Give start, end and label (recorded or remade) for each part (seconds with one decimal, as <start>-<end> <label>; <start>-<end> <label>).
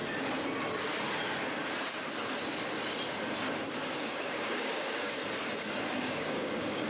0.0-4.1 recorded; 4.1-5.2 remade; 5.2-6.0 recorded; 6.0-6.9 remade